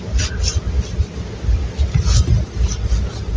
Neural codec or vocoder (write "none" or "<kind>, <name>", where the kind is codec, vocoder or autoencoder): none